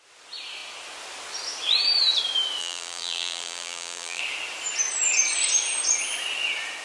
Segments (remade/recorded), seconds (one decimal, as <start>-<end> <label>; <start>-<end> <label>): 0.0-2.6 recorded; 2.6-4.2 remade; 4.2-6.8 recorded